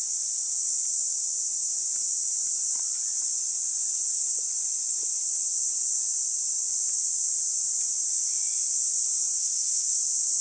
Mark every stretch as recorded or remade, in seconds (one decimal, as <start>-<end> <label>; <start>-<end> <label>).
0.0-9.4 recorded; 9.4-10.0 remade; 10.0-10.4 recorded